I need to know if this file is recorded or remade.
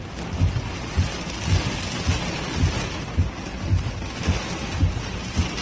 recorded